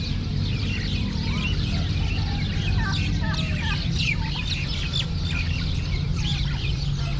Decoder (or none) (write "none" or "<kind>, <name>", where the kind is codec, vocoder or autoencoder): none